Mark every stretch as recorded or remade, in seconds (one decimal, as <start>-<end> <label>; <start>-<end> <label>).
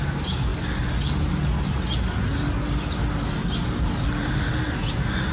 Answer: 0.0-5.3 recorded